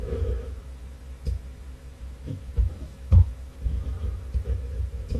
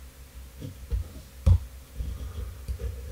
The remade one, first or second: first